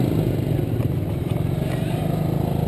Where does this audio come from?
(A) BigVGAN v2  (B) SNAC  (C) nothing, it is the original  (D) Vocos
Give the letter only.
C